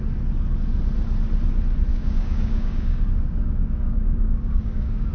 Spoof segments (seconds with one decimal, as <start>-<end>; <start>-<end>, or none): 1.9-5.1